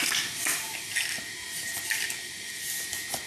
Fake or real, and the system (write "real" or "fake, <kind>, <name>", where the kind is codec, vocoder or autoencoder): real